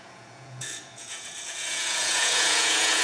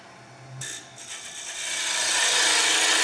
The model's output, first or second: first